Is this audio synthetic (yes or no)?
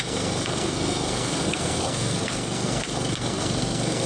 yes